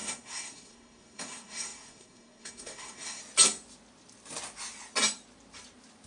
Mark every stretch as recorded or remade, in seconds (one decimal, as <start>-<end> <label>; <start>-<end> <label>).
0.0-3.2 remade; 3.2-6.1 recorded